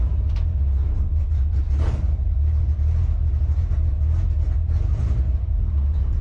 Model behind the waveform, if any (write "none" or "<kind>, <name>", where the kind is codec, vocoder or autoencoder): none